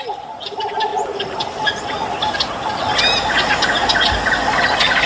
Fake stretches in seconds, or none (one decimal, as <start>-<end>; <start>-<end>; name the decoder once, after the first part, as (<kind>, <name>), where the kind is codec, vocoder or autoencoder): none